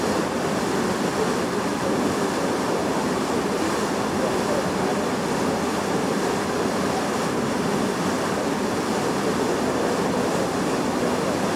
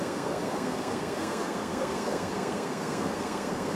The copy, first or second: second